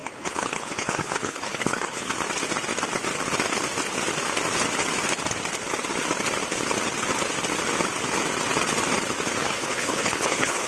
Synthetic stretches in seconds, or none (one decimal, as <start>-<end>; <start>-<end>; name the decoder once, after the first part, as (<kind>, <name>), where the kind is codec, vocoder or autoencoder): 0.0-2.1 (codec, HILCodec); 9.4-10.7